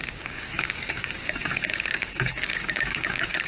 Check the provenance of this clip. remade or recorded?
remade